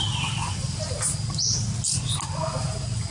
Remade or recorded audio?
recorded